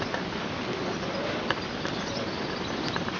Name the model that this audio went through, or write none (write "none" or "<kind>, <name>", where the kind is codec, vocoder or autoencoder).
none